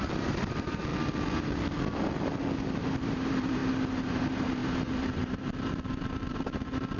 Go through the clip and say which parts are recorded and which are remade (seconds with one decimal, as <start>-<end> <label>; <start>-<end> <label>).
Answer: 0.0-0.9 remade; 0.9-2.8 recorded; 2.8-3.6 remade; 3.6-4.1 recorded; 4.1-7.0 remade